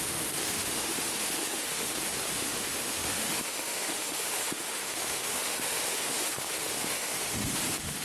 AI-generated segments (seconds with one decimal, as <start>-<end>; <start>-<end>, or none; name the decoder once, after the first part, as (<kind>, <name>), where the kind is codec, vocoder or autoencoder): 0.0-8.0 (autoencoder, DAC-VAE)